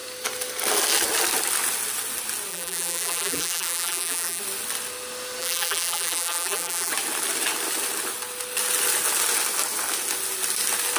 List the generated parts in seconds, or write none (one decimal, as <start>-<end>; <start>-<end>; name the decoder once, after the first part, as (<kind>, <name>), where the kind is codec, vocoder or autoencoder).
2.5-4.4 (vocoder, BigVGAN v2); 5.4-6.9